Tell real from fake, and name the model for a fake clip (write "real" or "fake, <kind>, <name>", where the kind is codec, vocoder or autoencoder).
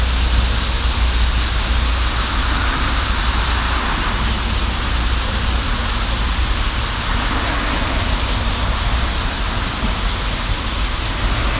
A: real